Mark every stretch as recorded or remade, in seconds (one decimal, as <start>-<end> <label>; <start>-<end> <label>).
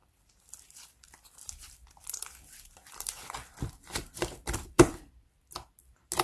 0.0-3.7 remade; 3.7-4.4 recorded; 4.4-5.1 remade; 5.1-6.2 recorded